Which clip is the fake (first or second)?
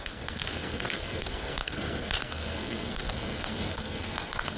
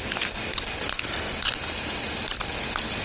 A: first